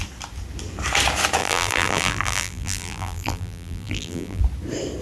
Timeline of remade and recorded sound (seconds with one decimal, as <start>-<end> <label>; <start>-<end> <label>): 0.0-1.4 recorded; 1.4-4.4 remade; 4.4-5.0 recorded

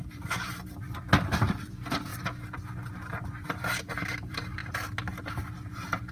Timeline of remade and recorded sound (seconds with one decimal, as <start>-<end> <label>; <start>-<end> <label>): 0.0-2.1 remade; 2.1-2.9 recorded; 2.9-4.6 remade; 4.6-5.2 recorded; 5.2-6.1 remade